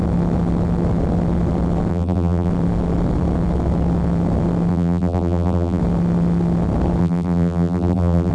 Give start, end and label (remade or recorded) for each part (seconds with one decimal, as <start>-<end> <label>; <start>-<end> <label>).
0.0-1.9 recorded; 1.9-2.5 remade; 2.5-4.7 recorded; 4.7-5.8 remade; 5.8-7.0 recorded; 7.0-8.3 remade